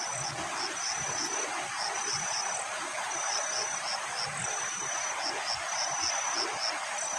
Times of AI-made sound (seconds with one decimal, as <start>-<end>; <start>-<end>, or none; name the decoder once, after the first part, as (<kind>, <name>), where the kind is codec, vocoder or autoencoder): none